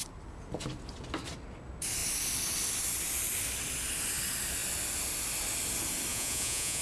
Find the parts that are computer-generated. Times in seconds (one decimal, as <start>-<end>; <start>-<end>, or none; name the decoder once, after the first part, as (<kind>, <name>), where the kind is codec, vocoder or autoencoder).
6.1-6.8 (vocoder, Vocos)